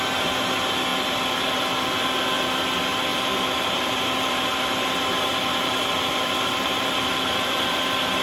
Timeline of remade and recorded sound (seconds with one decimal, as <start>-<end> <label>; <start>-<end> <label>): 0.0-3.1 recorded; 3.1-8.2 remade